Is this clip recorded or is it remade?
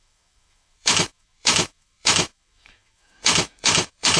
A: remade